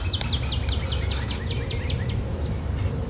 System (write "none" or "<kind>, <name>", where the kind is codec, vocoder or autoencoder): none